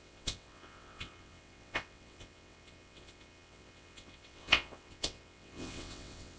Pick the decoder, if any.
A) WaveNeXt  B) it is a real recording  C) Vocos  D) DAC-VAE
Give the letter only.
A